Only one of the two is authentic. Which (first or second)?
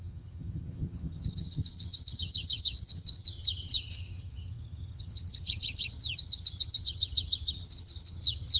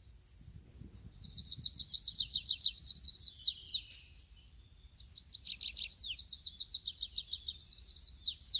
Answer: second